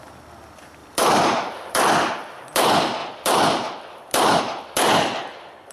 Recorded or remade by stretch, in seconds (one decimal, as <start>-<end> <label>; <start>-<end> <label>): 0.0-0.8 recorded; 0.8-2.1 remade; 2.1-3.0 recorded; 3.0-4.4 remade; 4.4-5.7 recorded